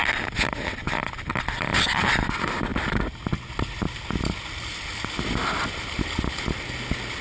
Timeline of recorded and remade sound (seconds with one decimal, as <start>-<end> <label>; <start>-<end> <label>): 0.0-7.2 recorded